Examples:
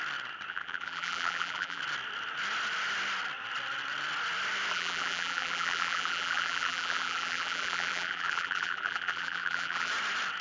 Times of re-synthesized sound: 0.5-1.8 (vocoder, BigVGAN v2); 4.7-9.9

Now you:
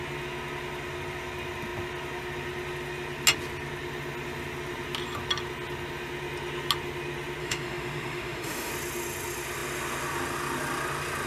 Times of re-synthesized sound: 7.4-8.7 (autoencoder, DAC-VAE)

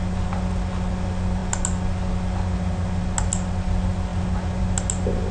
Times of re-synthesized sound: none

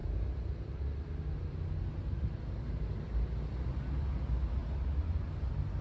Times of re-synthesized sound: none

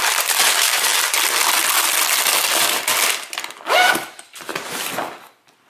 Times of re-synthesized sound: 0.0-0.9 (vocoder, BigVGAN v2); 3.7-4.5

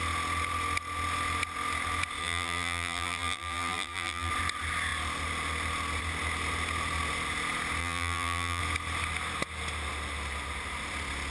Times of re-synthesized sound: 2.2-4.3 (vocoder, BigVGAN v2); 7.8-8.6

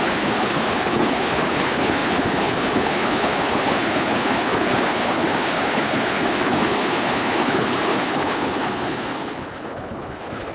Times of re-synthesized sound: 0.0-10.5 (codec, HILCodec)

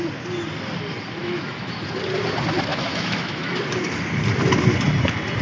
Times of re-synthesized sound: 1.2-1.8 (autoencoder, DAC-VAE); 2.7-3.5